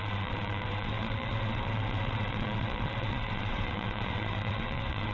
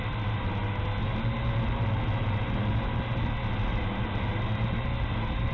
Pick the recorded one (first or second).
second